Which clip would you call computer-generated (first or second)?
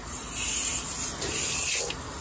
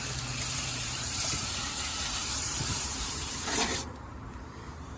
second